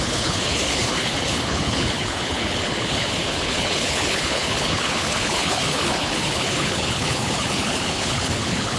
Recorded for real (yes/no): no